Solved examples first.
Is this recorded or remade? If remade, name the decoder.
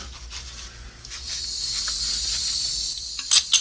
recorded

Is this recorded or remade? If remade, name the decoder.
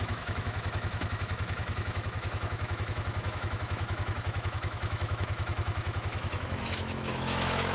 remade, autoencoder, DAC-VAE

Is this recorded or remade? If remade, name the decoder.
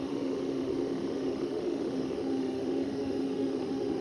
remade, autoencoder, DAC-VAE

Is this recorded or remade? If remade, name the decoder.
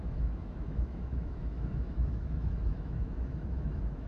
remade, autoencoder, DAC-VAE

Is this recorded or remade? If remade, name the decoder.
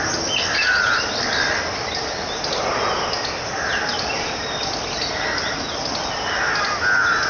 recorded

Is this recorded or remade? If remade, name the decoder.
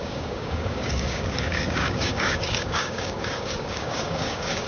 remade, codec, DAC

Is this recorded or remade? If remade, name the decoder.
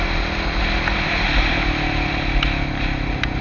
recorded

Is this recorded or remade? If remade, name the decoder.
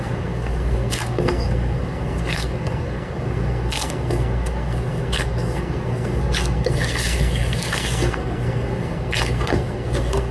remade, codec, SNAC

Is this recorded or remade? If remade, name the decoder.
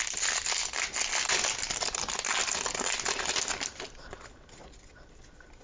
recorded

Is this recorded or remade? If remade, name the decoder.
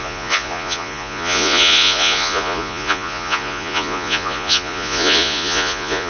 remade, vocoder, Vocos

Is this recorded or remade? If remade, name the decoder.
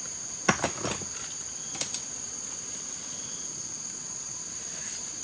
recorded